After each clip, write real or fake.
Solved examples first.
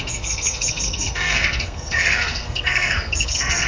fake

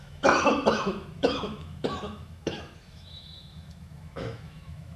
fake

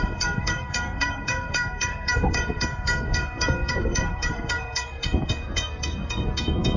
fake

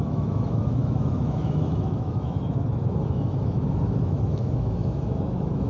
fake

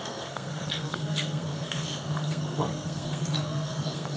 fake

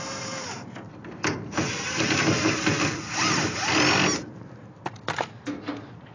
real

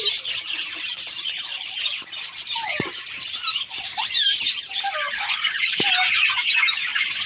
fake